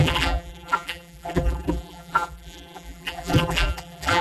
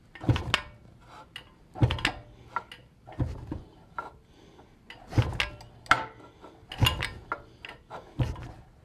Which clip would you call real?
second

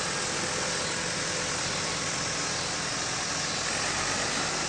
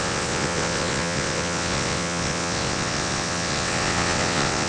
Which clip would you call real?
first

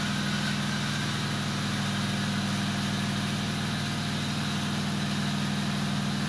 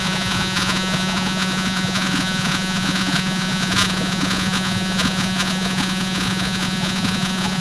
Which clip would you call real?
first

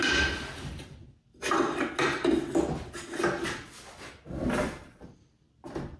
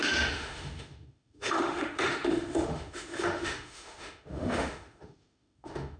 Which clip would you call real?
first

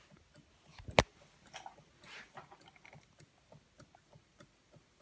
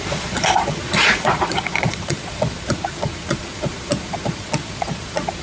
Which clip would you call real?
first